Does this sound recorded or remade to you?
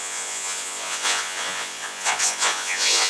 remade